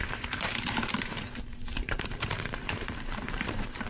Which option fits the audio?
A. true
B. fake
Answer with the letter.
B